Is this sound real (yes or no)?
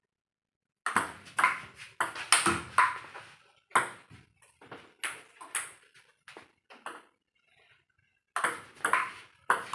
yes